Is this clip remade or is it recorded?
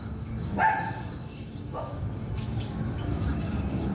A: remade